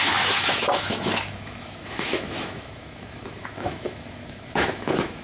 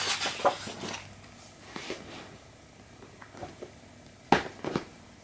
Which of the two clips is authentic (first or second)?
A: second